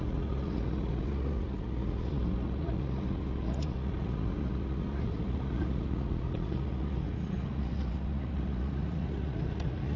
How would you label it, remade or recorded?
remade